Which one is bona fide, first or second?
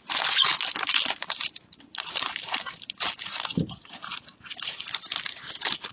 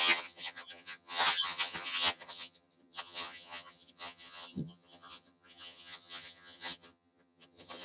first